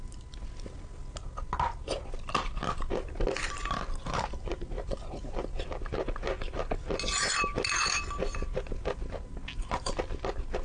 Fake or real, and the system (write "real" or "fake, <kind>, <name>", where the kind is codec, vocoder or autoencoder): real